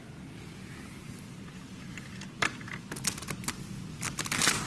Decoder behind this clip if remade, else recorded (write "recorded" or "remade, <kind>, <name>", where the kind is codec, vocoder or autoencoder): recorded